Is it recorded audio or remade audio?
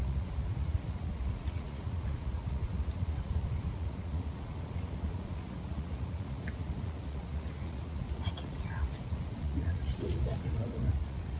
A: remade